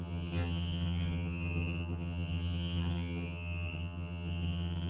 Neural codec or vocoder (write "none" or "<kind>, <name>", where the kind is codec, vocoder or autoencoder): vocoder, HiFi-GAN